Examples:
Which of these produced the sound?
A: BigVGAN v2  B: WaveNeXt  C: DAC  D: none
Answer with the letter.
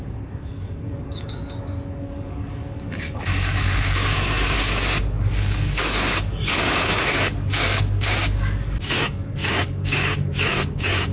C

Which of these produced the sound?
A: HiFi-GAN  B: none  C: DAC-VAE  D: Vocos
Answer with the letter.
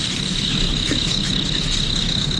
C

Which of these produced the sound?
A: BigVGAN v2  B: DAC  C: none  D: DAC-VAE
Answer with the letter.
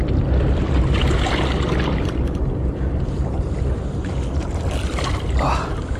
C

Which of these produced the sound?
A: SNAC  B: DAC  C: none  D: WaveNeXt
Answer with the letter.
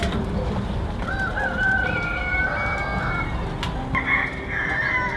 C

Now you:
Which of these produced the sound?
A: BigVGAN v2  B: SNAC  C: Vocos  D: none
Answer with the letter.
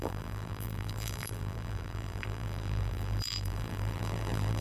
A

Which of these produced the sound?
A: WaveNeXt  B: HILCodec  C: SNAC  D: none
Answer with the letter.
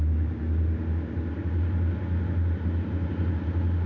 D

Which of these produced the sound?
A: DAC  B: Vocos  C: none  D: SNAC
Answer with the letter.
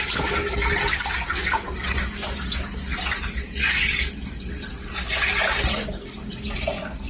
C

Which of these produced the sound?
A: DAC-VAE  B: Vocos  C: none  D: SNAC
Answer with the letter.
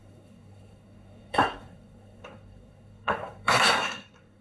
D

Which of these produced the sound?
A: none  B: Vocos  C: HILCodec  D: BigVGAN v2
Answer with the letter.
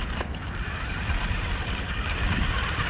D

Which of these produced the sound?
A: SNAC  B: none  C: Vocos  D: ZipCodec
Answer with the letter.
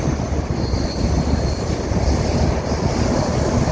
B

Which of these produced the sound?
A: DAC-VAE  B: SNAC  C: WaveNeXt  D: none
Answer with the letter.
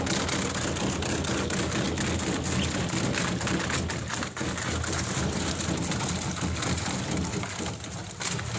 D